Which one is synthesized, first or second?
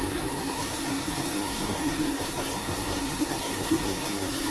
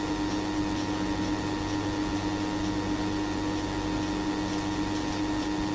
first